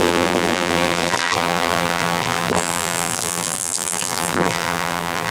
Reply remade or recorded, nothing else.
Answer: remade